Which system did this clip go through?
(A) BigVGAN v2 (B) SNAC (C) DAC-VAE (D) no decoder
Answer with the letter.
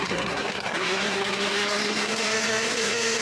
B